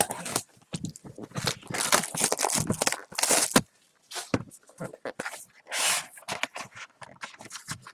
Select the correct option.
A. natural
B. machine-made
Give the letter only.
A